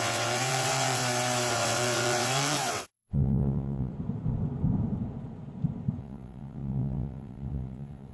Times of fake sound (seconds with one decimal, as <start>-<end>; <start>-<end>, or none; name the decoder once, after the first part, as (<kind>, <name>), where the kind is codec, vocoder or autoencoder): 0.0-1.0 (vocoder, WaveNeXt); 1.5-3.9; 6.0-8.1